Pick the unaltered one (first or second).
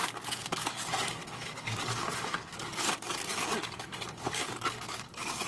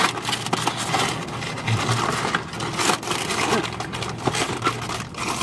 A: second